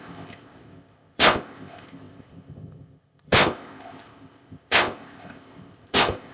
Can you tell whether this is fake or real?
fake